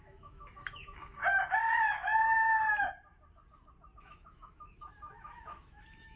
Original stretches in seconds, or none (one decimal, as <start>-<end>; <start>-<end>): 1.2-4.0